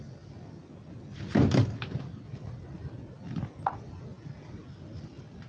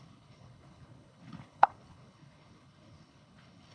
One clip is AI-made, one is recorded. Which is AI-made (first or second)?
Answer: second